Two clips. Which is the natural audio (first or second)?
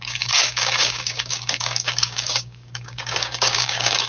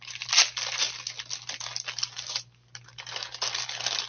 second